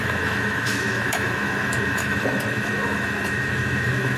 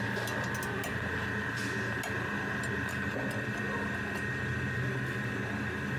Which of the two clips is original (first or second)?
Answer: second